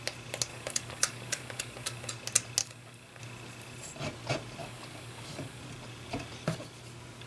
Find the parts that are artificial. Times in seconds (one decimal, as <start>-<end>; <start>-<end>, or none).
0.5-2.1; 2.6-3.2; 4.6-5.6